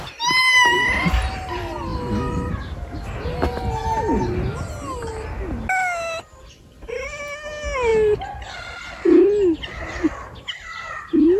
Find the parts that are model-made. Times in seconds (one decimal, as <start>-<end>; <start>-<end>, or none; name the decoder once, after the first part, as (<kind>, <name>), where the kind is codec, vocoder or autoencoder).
none

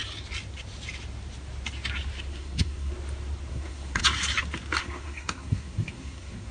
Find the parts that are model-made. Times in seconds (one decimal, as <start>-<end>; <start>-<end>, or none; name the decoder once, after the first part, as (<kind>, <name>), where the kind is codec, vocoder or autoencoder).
2.3-2.9 (codec, SNAC); 3.5-4.0; 4.8-6.5

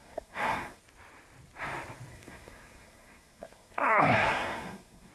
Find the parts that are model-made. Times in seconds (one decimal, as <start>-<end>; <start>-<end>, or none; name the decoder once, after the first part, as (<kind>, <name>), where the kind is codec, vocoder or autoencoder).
0.0-0.8 (codec, SNAC); 2.1-5.1

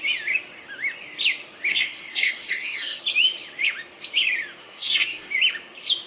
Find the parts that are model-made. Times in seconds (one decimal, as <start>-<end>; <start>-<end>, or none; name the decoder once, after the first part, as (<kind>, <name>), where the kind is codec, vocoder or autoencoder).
1.7-3.0 (codec, SNAC); 4.6-5.3

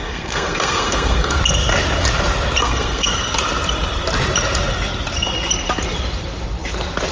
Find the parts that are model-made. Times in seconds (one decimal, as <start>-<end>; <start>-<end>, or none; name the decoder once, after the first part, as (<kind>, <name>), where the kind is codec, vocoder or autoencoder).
0.0-1.4 (codec, SNAC); 2.6-3.2

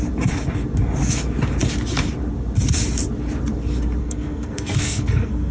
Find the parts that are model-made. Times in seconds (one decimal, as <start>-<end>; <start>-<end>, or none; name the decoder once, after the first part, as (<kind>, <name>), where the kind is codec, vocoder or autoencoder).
4.0-5.5 (codec, SNAC)